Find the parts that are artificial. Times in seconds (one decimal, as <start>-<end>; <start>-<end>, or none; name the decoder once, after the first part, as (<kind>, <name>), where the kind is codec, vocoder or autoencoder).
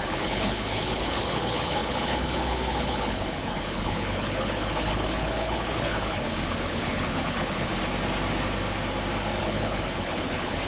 0.0-7.7 (codec, HILCodec); 9.4-10.7